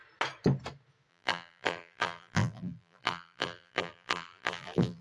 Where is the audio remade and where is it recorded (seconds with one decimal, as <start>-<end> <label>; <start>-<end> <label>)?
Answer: 0.0-1.1 recorded; 1.1-5.0 remade